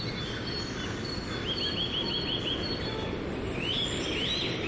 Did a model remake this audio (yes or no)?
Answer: no